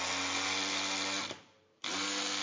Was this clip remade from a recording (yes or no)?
no